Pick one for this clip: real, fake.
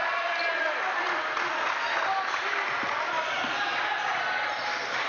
real